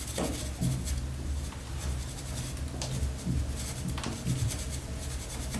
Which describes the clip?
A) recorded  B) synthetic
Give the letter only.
A